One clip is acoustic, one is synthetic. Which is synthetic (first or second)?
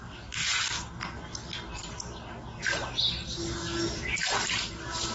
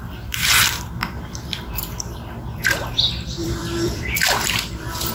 second